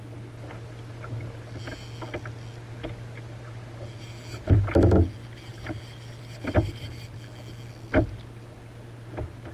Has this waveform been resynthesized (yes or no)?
no